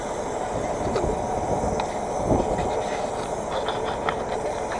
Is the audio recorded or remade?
recorded